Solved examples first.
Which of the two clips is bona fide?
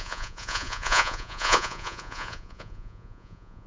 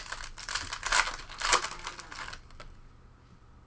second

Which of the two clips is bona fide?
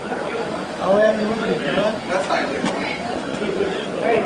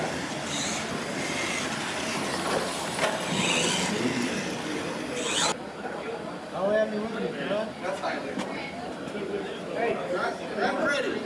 second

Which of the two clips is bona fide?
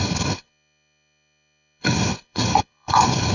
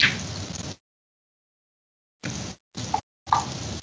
second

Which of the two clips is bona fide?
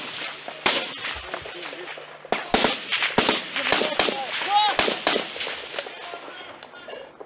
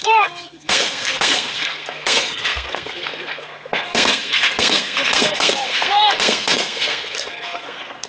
first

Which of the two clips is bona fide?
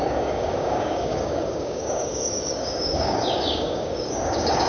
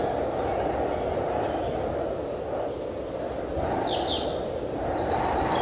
second